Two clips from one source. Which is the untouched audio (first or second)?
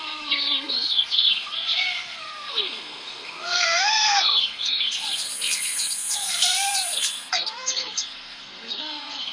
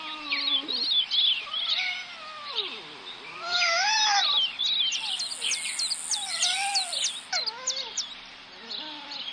second